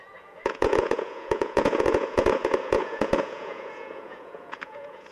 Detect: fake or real fake